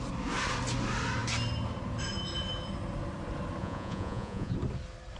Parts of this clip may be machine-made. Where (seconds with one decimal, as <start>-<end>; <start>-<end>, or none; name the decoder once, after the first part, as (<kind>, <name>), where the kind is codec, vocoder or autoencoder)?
3.6-4.5 (vocoder, Vocos)